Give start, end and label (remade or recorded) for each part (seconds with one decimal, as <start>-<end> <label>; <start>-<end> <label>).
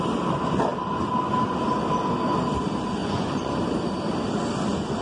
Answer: 0.0-3.0 recorded; 3.0-3.5 remade; 3.5-5.0 recorded